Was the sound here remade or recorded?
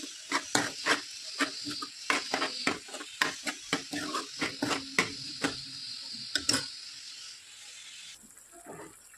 recorded